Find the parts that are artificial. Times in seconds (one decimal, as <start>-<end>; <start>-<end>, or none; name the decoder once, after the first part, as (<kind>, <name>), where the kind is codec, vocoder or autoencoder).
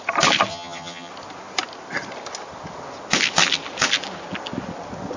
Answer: 0.5-1.1 (vocoder, HiFi-GAN)